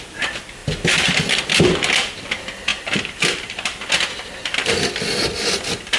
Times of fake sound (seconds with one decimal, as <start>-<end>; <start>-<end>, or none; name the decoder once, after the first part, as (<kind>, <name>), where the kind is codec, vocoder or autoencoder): none